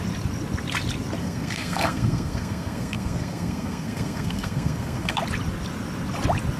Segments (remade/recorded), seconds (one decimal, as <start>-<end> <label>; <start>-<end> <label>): 0.0-1.2 recorded; 1.2-5.2 remade; 5.2-6.6 recorded